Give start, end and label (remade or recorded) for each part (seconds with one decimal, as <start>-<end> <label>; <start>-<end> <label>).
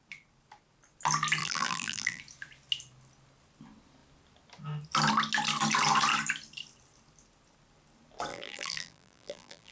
0.0-1.4 recorded; 1.4-2.2 remade; 2.2-8.3 recorded; 8.3-9.7 remade